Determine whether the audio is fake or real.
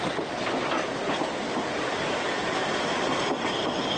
real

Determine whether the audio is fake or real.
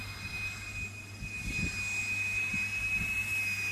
real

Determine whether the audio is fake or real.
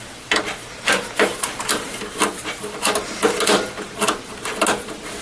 real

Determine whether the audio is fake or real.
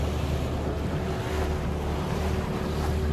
real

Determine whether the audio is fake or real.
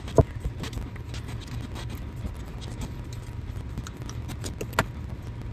real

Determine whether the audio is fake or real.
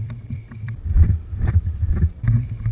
fake